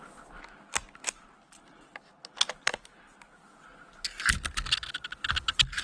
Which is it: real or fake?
real